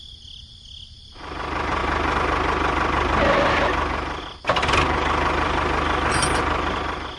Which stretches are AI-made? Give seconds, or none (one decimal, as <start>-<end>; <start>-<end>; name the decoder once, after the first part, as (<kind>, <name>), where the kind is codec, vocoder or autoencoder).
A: none